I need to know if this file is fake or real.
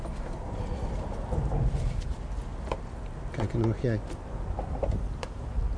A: real